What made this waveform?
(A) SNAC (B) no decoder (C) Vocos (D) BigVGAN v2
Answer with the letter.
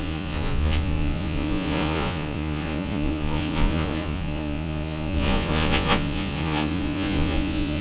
C